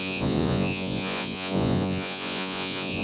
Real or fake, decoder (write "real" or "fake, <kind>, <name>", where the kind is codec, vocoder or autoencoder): fake, vocoder, Vocos